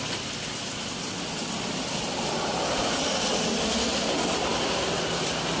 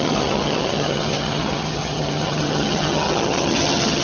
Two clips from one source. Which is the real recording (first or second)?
first